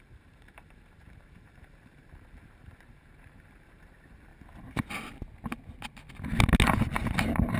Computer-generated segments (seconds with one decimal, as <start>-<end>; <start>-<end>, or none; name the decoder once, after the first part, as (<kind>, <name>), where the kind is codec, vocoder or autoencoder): 0.0-4.3 (vocoder, BigVGAN v2); 6.8-7.6